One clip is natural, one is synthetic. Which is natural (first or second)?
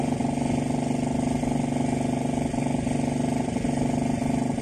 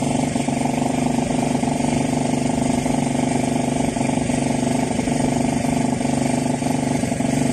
first